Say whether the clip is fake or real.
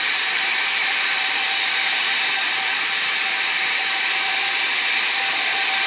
fake